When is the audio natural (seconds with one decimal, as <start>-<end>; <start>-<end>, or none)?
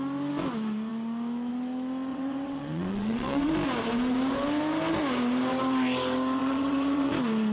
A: 0.0-2.1; 3.5-6.4; 7.1-7.5